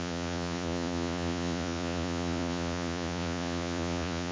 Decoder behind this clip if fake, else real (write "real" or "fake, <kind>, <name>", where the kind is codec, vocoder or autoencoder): fake, vocoder, Vocos